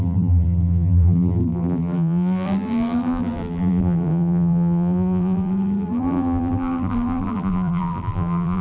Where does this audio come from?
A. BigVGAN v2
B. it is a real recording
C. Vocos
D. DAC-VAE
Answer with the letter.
A